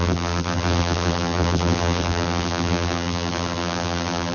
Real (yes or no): no